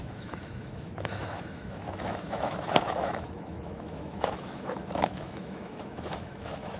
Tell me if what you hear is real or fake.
fake